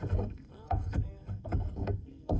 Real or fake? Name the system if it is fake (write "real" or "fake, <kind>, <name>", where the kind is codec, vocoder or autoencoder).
fake, codec, SNAC